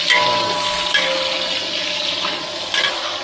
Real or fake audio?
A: real